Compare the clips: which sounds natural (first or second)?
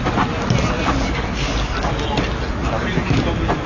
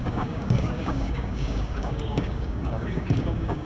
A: first